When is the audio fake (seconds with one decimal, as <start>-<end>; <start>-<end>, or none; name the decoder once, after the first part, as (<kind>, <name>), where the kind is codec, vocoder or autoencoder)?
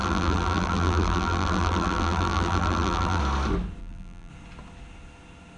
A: 0.0-3.2 (vocoder, BigVGAN v2); 3.8-4.3